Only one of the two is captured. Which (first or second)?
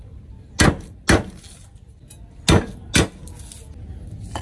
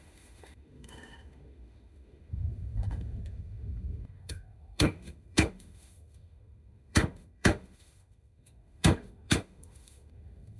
first